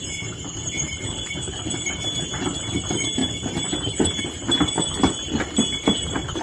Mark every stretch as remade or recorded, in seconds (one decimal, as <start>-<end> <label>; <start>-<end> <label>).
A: 0.0-0.6 recorded; 0.6-2.8 remade; 2.8-3.2 recorded; 3.2-4.2 remade; 4.2-6.4 recorded

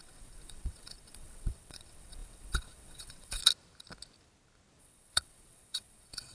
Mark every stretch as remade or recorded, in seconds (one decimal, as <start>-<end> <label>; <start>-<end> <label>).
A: 0.0-3.4 remade; 3.4-4.8 recorded; 4.8-6.3 remade

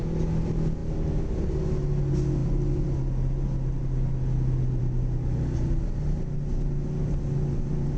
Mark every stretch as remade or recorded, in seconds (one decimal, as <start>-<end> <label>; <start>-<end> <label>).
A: 0.0-8.0 recorded